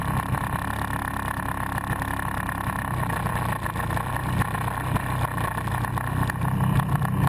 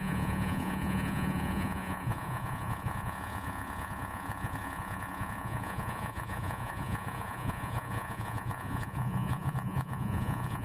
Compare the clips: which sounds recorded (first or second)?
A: first